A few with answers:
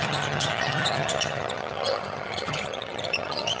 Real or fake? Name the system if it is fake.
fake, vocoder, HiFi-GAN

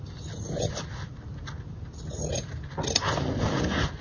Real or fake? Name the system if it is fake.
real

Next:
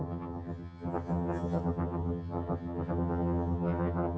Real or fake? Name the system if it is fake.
fake, vocoder, HiFi-GAN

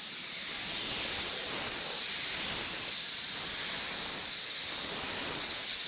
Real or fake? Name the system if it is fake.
real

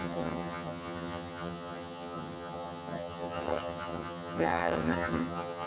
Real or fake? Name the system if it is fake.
fake, vocoder, HiFi-GAN